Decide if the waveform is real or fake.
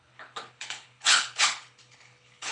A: fake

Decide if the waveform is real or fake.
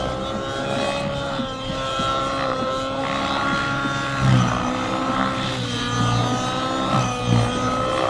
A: real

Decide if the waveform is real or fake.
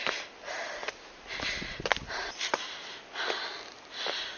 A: real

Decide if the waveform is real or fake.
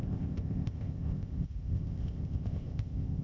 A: fake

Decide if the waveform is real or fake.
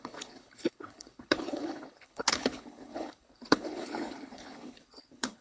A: fake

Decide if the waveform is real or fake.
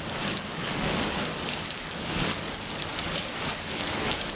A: fake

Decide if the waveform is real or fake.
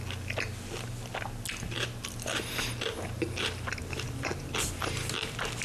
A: real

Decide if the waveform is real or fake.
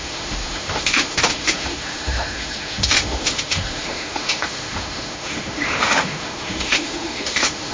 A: fake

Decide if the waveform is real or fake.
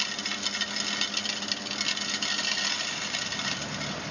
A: real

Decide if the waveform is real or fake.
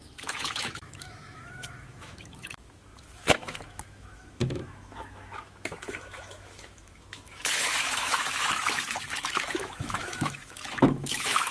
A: fake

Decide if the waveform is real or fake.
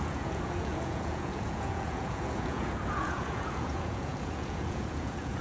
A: fake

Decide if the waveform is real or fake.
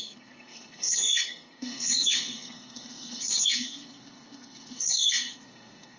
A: fake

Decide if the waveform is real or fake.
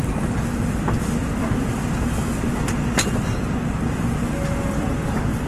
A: real